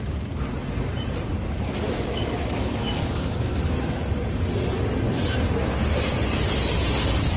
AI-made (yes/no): no